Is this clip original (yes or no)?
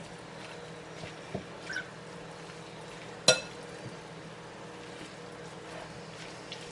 yes